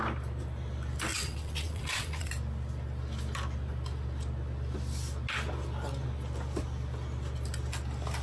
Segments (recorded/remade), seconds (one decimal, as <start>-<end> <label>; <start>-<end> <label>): 0.0-1.1 recorded; 1.1-2.3 remade; 2.3-8.2 recorded